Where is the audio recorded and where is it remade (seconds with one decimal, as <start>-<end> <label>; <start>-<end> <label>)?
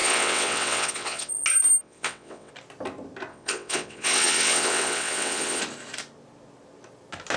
0.0-1.3 remade; 1.3-1.8 recorded; 1.8-2.5 remade; 2.5-3.3 recorded; 3.3-5.6 remade; 5.6-7.4 recorded